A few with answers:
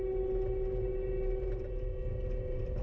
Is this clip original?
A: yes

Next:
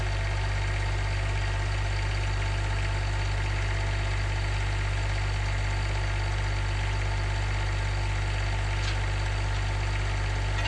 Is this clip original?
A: yes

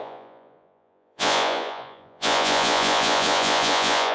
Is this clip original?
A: no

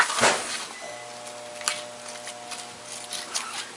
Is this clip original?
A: yes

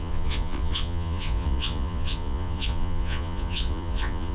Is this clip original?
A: no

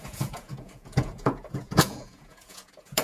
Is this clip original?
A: no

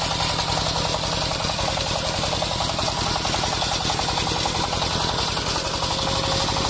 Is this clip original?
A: yes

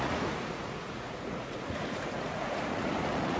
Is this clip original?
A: no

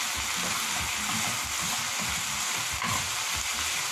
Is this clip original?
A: yes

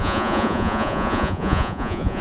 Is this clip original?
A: no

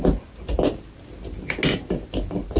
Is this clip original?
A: yes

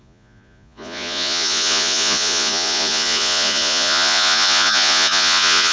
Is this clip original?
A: no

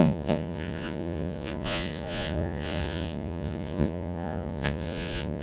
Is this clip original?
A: no